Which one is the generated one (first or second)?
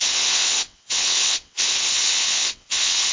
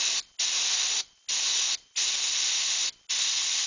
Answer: first